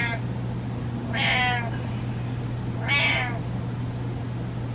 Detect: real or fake real